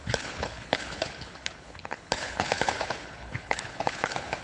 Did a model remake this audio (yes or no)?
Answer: yes